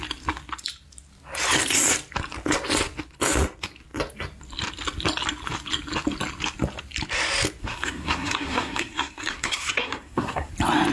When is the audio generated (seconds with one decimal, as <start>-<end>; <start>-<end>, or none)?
7.6-10.5

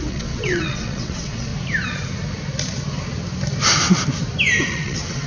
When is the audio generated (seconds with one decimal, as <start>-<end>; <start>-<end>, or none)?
0.0-1.5; 4.7-5.3

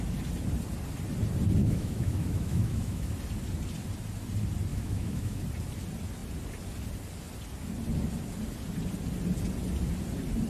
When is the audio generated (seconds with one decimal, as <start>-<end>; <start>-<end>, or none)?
1.6-3.1; 4.7-5.4

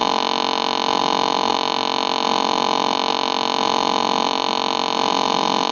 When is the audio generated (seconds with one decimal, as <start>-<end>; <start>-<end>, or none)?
none